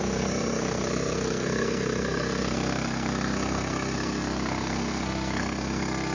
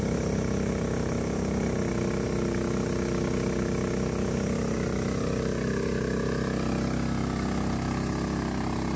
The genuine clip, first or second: second